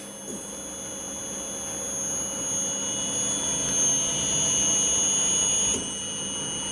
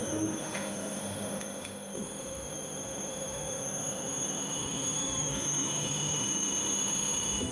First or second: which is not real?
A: second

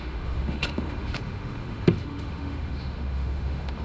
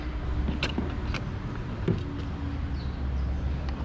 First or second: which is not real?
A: first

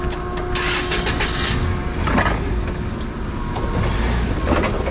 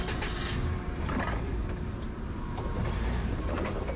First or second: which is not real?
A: second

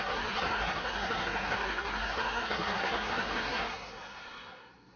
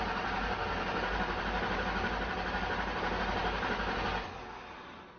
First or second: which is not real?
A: first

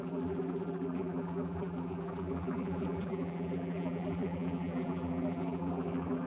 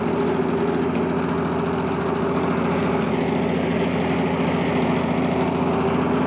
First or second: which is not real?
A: first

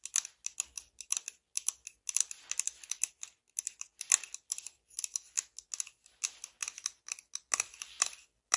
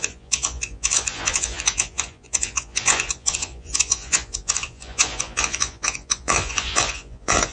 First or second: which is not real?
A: second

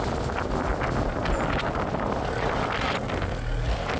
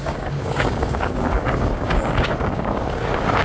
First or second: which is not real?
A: second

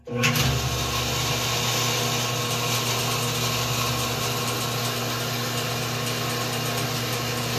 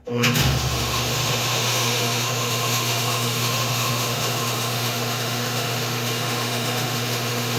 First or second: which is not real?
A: second